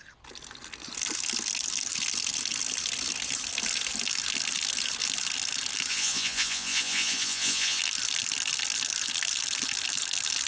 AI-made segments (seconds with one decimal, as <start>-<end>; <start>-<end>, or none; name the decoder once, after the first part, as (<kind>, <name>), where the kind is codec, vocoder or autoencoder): 5.9-7.8 (vocoder, Vocos)